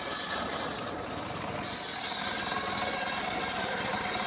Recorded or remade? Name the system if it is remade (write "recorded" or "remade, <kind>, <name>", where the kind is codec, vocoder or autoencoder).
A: recorded